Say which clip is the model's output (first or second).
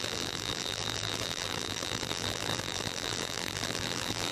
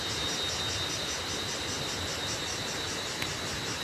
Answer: first